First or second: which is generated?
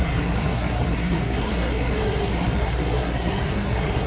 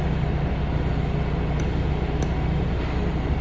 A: first